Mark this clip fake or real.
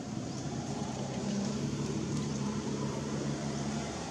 fake